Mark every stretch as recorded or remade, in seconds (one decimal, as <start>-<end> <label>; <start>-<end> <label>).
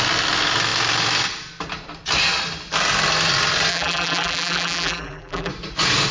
0.0-3.7 recorded; 3.7-5.5 remade; 5.5-6.1 recorded